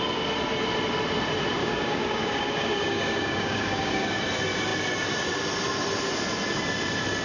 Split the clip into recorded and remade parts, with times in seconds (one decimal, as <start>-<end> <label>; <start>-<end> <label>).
0.0-1.6 recorded; 1.6-4.2 remade; 4.2-7.2 recorded